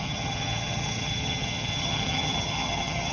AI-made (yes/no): yes